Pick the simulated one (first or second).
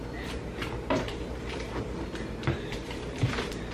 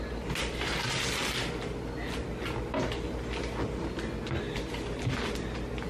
first